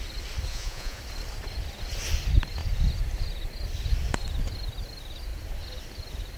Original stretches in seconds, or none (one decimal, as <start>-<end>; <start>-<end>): 0.0-0.5; 1.0-6.4